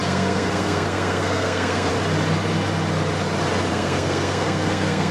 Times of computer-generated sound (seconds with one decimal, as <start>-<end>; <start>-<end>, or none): 0.0-1.9; 3.7-5.1